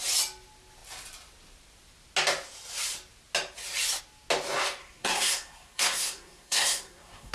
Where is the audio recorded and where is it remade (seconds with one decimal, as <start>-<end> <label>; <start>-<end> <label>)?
0.0-4.8 recorded; 4.8-7.3 remade